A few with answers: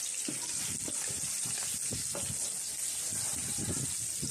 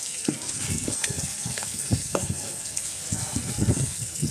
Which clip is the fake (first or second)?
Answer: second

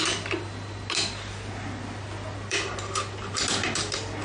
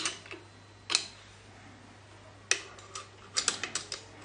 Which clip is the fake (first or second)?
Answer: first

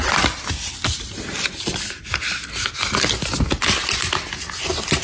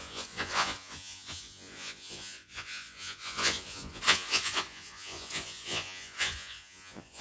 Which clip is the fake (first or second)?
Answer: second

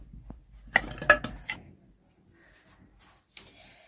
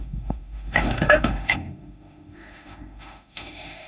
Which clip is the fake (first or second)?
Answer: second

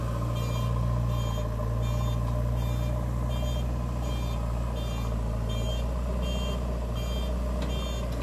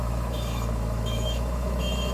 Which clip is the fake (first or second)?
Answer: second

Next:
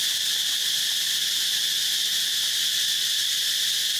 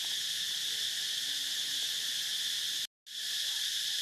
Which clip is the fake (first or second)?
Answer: first